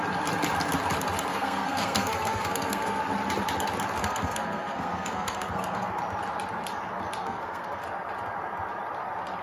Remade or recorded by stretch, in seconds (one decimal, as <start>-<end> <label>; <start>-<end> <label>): 0.0-1.3 recorded; 1.3-3.0 remade; 3.0-4.0 recorded; 4.0-6.0 remade; 6.0-7.2 recorded; 7.2-7.8 remade; 7.8-9.4 recorded